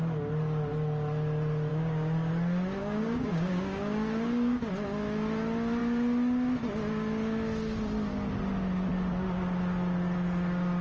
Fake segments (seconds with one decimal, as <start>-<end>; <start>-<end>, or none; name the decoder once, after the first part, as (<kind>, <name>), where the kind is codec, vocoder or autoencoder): 1.7-2.3 (codec, DAC); 2.8-4.6